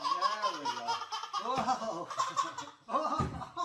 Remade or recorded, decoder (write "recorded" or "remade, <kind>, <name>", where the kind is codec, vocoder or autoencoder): recorded